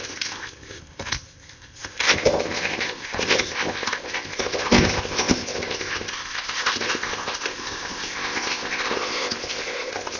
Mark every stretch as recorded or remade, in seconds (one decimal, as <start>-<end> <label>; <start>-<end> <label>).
0.0-10.2 remade